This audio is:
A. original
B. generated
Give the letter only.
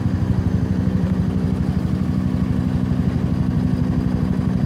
A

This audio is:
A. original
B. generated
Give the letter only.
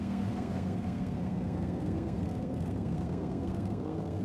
B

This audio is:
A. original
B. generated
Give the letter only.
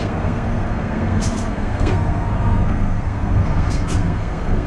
B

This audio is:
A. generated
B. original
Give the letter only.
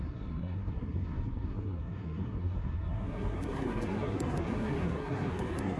A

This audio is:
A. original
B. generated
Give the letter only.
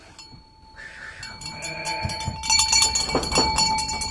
A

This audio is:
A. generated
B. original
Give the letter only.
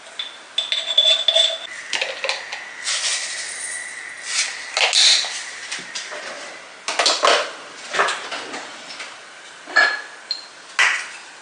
B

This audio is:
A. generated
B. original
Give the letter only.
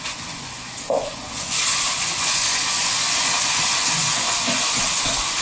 A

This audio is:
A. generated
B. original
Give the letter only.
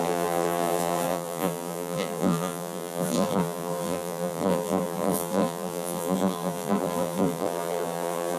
A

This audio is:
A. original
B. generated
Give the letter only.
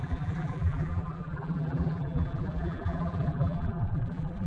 B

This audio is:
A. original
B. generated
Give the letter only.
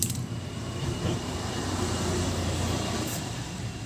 B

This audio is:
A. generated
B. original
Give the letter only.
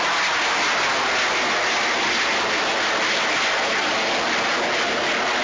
B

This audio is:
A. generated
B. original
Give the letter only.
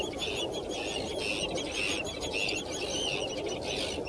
B